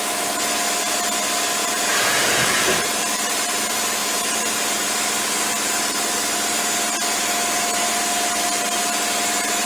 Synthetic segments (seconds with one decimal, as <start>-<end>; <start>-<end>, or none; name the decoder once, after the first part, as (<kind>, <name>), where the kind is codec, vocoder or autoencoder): 1.6-2.7 (vocoder, Vocos)